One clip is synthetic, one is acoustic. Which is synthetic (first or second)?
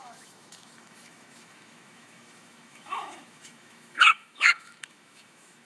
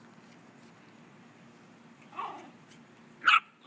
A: first